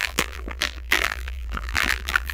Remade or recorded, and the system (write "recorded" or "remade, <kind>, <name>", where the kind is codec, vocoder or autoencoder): remade, vocoder, BigVGAN v2